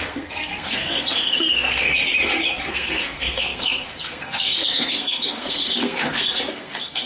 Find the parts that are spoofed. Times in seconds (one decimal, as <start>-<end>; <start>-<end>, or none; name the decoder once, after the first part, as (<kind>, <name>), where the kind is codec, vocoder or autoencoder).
0.0-1.9 (codec, SNAC); 2.7-7.1